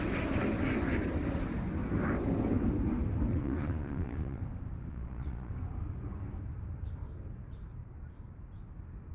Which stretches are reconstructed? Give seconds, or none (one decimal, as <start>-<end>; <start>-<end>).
3.3-4.4; 4.9-5.5

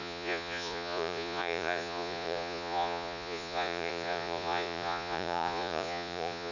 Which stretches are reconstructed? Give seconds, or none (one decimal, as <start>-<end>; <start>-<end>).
0.0-6.5

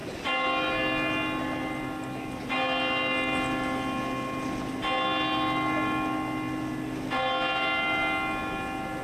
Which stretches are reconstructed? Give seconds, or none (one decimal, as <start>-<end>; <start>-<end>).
none

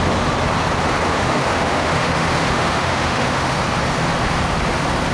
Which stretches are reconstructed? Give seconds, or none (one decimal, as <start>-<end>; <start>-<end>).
1.1-3.6

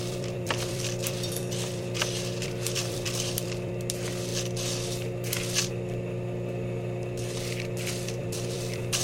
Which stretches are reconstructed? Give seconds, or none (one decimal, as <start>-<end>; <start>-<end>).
0.0-3.7; 8.2-9.0